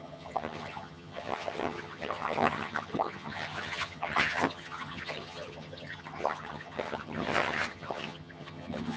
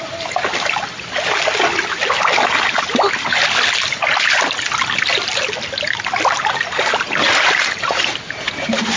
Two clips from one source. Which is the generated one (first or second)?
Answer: first